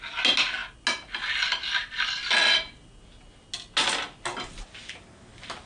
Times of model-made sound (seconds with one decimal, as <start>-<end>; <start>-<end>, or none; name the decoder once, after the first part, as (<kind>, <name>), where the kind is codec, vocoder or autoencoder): none